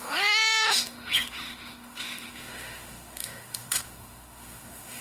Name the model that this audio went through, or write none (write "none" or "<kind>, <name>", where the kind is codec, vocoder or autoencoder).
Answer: autoencoder, DAC-VAE